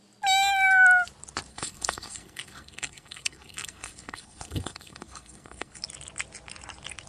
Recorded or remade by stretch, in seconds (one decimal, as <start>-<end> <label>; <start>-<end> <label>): 0.0-1.5 recorded; 1.5-5.8 remade; 5.8-7.1 recorded